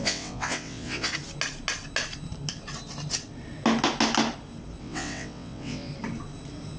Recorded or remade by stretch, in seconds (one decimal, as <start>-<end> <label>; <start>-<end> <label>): 0.0-1.1 remade; 1.1-4.8 recorded; 4.8-5.9 remade; 5.9-6.8 recorded